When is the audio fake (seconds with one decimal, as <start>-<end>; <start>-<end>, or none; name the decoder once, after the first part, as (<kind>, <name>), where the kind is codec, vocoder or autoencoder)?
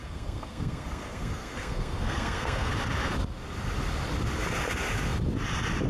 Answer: 0.0-2.7 (codec, SNAC)